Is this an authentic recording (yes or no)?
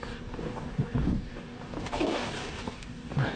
no